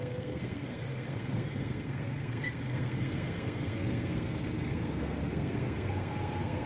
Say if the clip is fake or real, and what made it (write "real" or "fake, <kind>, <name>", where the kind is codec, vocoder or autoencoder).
fake, codec, SNAC